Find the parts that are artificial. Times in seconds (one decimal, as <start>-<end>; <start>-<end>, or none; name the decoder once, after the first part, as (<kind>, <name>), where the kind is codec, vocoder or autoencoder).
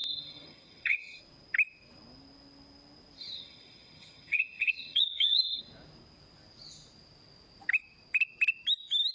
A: 0.0-1.2 (vocoder, HiFi-GAN); 3.2-5.6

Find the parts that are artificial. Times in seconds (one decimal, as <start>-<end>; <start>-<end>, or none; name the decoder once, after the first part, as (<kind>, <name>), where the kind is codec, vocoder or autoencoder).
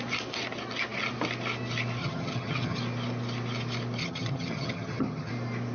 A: 2.0-2.8 (vocoder, HiFi-GAN); 4.0-5.3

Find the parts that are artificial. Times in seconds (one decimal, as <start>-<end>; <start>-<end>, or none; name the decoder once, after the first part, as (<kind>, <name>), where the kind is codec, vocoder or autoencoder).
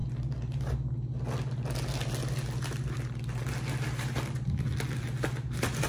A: none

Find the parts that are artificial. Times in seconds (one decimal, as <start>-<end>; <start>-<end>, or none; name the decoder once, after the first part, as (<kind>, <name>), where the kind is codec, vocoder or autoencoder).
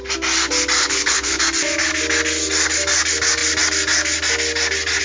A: 0.8-1.4 (codec, HILCodec)